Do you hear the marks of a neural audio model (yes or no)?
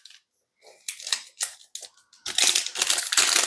no